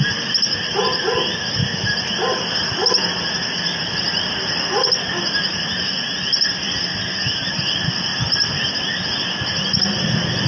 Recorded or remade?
recorded